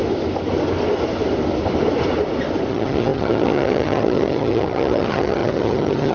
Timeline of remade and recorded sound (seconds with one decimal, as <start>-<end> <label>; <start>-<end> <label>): 0.0-2.7 recorded; 2.7-6.1 remade